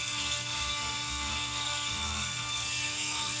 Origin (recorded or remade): remade